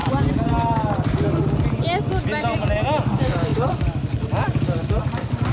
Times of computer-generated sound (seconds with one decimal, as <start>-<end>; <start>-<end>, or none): none